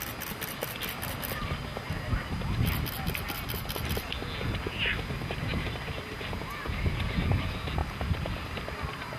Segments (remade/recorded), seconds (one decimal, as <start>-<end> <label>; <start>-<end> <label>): 0.0-9.2 recorded

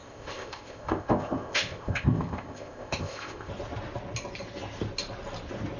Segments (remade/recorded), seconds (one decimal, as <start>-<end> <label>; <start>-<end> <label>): 0.0-3.5 remade; 3.5-5.8 recorded

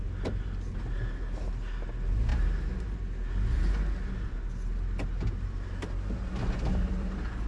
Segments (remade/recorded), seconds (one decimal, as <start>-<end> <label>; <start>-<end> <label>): 0.0-7.5 recorded

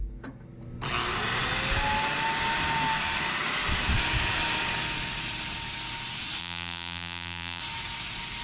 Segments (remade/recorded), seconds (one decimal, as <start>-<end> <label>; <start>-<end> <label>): 0.0-6.4 recorded; 6.4-7.6 remade; 7.6-8.4 recorded

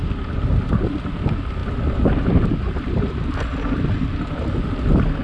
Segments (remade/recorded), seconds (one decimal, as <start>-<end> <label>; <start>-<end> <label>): 0.0-5.2 recorded

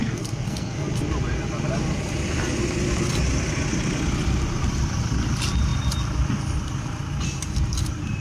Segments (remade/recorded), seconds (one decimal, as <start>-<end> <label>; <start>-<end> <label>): 0.0-0.9 remade; 0.9-8.2 recorded

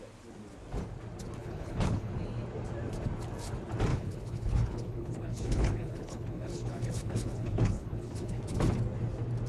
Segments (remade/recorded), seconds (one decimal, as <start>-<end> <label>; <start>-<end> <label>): 0.0-1.4 recorded; 1.4-2.1 remade; 2.1-3.9 recorded; 3.9-8.4 remade; 8.4-9.5 recorded